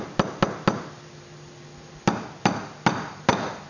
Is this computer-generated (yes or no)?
no